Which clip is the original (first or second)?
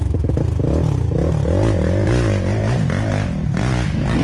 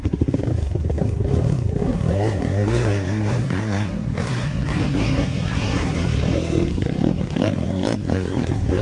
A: first